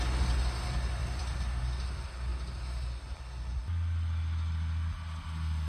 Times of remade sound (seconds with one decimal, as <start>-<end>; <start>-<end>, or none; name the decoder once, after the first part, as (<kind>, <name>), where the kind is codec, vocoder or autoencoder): 1.0-1.6 (vocoder, BigVGAN v2)